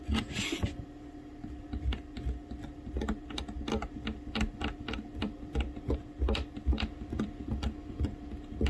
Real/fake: fake